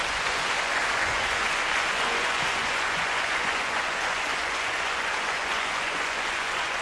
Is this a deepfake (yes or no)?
yes